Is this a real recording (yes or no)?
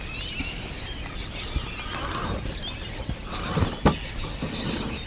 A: yes